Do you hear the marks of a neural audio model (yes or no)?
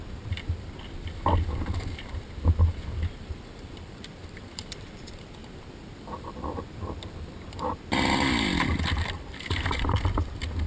yes